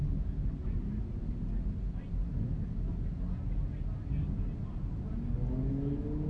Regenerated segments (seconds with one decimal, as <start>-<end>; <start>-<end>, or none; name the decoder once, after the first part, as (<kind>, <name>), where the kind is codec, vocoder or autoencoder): none